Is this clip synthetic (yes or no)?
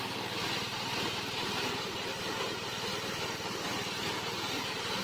yes